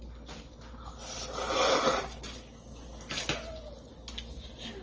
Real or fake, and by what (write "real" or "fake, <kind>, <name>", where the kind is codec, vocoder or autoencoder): real